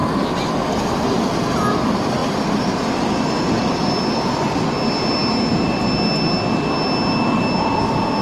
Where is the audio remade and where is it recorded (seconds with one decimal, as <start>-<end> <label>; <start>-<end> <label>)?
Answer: 0.0-8.2 recorded